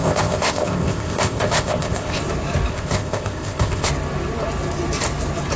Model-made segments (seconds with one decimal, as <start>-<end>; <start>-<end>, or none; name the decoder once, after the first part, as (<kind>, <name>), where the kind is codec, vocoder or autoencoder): 0.0-2.2 (codec, ZipCodec); 2.7-3.9